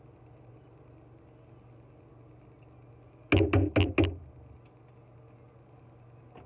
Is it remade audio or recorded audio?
recorded